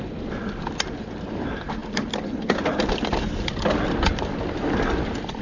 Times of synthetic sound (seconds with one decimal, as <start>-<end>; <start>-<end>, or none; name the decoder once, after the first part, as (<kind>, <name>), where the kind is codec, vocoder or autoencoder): none